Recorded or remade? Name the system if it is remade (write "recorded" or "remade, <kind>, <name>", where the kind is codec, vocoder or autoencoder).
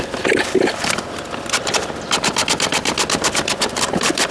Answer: remade, vocoder, BigVGAN v2